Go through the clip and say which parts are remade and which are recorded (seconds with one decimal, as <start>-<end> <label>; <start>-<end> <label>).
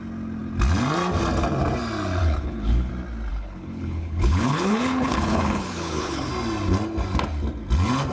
0.0-2.2 recorded; 2.2-2.9 remade; 2.9-3.3 recorded; 3.3-6.3 remade; 6.3-8.1 recorded